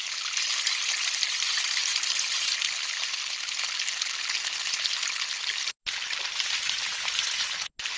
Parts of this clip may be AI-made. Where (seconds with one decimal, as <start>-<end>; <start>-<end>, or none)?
none